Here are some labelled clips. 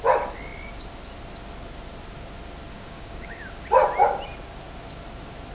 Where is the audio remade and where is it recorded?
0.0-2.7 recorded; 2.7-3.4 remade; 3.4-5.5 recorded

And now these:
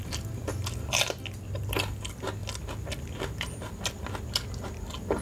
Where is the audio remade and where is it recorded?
0.0-5.2 recorded

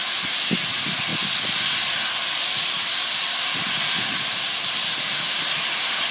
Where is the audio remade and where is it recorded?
0.0-6.1 recorded